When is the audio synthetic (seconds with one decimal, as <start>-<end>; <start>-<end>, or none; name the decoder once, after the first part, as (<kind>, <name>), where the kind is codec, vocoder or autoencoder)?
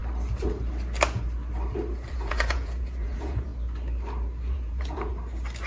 2.1-3.5 (vocoder, Vocos); 4.4-5.1